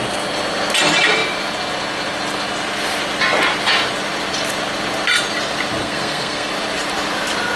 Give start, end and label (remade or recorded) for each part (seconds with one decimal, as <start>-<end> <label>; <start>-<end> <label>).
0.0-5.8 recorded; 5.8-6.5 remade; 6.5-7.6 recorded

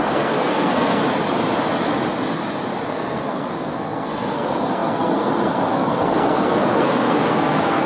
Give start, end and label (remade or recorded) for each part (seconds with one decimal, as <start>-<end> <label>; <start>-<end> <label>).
0.0-1.0 remade; 1.0-2.8 recorded; 2.8-7.9 remade

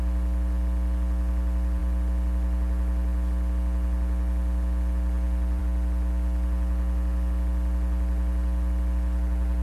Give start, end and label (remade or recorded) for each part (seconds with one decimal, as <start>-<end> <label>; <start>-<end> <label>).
0.0-9.6 recorded